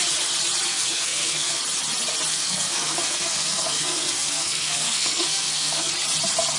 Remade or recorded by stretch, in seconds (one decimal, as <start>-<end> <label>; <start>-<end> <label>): 0.0-0.7 recorded; 0.7-1.6 remade; 1.6-2.3 recorded; 2.3-5.9 remade; 5.9-6.6 recorded